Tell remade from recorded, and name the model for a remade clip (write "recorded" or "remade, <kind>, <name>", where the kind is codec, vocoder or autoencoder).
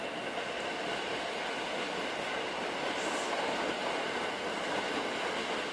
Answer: recorded